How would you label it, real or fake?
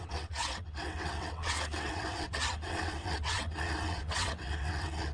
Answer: fake